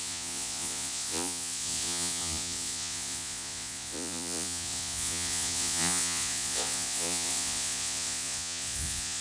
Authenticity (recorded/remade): remade